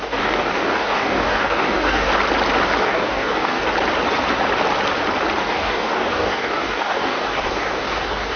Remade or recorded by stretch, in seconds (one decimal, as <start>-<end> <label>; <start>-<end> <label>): 0.0-2.1 remade; 2.1-2.8 recorded; 2.8-3.6 remade; 3.6-5.4 recorded; 5.4-8.4 remade